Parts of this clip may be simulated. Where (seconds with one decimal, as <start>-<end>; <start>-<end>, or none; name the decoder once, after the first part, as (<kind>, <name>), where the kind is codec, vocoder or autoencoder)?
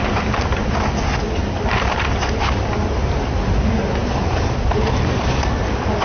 none